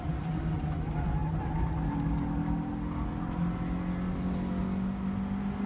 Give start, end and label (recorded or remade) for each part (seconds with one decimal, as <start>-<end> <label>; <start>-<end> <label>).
0.0-5.7 recorded